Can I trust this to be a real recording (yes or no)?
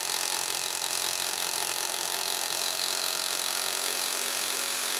no